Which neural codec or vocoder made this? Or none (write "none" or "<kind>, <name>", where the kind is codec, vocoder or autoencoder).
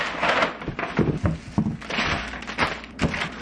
none